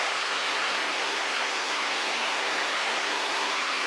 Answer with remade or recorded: remade